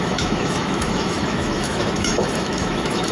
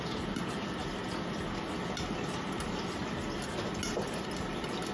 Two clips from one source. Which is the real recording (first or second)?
second